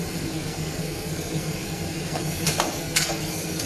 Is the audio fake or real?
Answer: fake